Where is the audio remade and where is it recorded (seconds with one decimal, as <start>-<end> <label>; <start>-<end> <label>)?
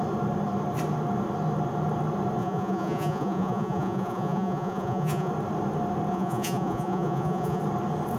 0.0-2.4 recorded; 2.4-5.3 remade; 5.3-6.1 recorded; 6.1-7.6 remade; 7.6-8.2 recorded